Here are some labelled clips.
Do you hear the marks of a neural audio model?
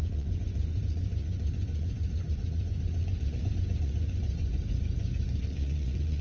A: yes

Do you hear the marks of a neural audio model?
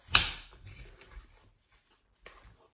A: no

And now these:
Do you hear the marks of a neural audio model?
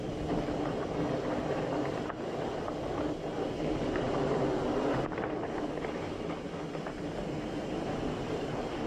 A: no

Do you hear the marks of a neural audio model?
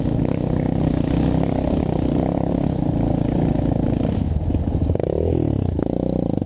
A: no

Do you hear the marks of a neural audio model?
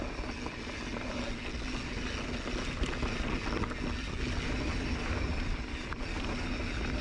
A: no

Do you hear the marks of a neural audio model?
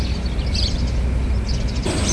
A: no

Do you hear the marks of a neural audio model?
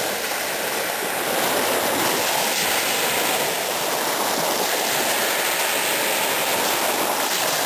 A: no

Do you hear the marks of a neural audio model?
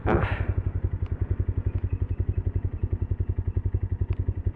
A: no